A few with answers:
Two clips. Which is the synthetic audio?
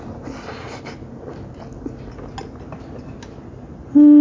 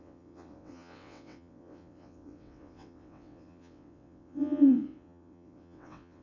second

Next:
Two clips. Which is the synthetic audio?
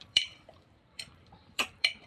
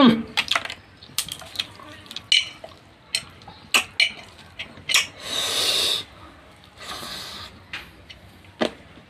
first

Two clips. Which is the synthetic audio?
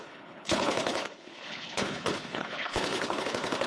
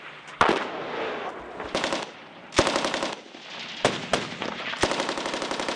first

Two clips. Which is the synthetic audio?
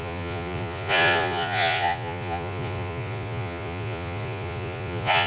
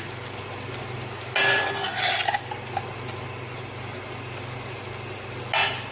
first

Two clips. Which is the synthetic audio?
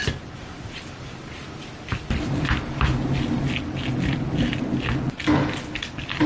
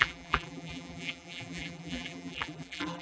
second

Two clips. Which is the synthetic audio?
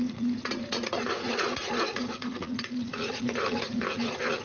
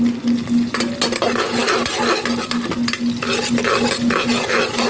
first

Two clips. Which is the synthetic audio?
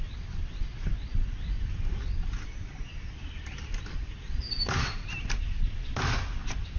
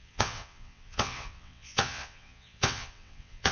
second